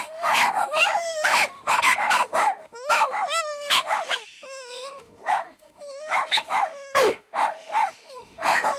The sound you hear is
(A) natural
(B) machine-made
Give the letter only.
B